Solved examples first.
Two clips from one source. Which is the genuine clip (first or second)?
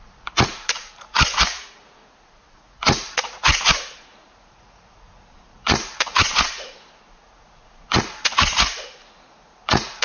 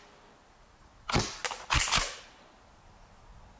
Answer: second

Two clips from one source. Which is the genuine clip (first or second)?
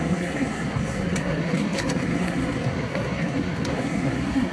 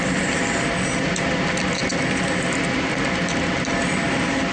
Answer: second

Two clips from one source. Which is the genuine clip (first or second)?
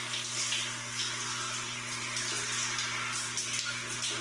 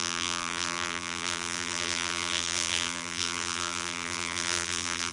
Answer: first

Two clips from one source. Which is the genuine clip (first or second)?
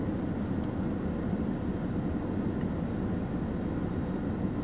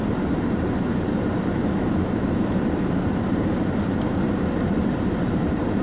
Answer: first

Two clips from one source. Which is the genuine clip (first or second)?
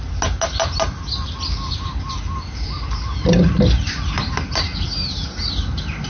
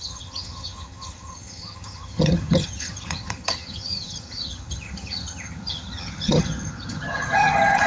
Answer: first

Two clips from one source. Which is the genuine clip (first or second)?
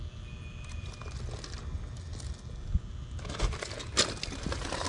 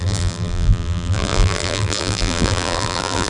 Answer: first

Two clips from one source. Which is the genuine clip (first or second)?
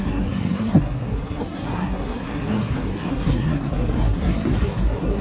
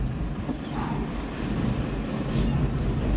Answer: second